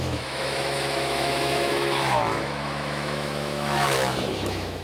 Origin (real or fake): fake